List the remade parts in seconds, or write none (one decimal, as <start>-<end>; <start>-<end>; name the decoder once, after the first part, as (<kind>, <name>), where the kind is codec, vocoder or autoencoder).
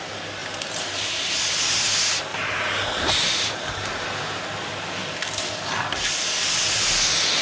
0.4-1.5 (vocoder, BigVGAN v2); 2.3-4.4